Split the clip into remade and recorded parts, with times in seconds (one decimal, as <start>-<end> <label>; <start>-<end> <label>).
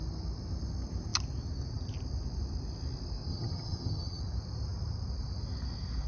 0.0-3.3 recorded; 3.3-4.2 remade; 4.2-6.1 recorded